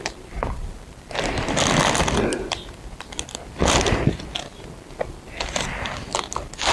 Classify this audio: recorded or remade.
recorded